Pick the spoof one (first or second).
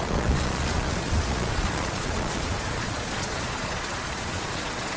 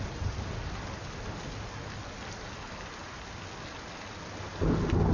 first